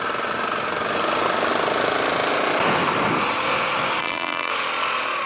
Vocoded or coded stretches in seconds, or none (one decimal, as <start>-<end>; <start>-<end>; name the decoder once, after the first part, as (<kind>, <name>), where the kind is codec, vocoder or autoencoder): 4.0-4.5 (vocoder, BigVGAN v2)